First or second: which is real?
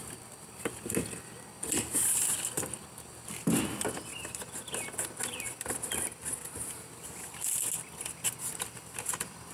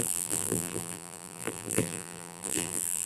first